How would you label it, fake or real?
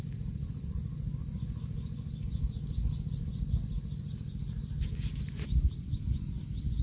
real